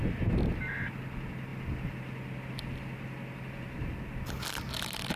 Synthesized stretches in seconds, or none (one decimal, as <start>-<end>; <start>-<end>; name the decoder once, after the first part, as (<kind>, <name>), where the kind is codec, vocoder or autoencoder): none